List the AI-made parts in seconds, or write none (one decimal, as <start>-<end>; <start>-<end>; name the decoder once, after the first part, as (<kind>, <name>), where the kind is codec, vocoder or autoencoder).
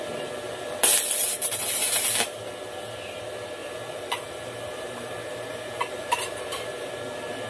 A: 1.2-2.0 (vocoder, BigVGAN v2); 3.6-6.9